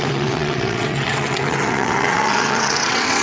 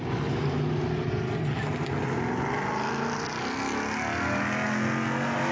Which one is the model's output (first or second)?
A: first